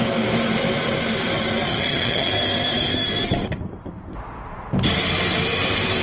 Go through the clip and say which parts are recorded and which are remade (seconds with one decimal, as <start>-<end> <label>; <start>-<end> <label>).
0.0-1.7 recorded; 1.7-2.3 remade; 2.3-6.0 recorded